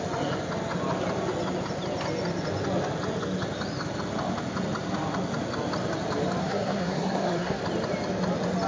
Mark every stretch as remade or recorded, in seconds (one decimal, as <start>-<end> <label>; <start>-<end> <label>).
0.0-6.4 recorded; 6.4-7.6 remade; 7.6-8.7 recorded